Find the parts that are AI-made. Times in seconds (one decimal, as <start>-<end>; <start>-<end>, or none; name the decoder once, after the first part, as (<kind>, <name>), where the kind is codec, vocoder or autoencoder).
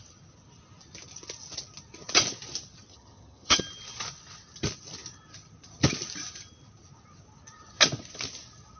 2.9-3.6 (vocoder, HiFi-GAN)